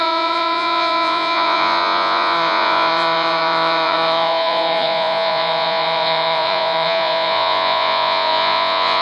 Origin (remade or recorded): remade